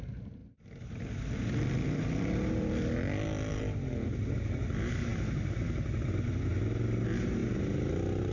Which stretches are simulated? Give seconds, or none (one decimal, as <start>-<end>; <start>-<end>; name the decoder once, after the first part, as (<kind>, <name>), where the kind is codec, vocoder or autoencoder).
0.4-3.6 (vocoder, BigVGAN v2)